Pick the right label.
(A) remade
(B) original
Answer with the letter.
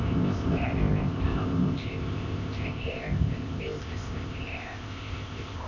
A